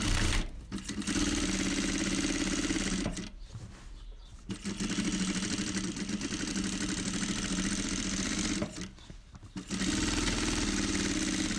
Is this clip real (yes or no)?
yes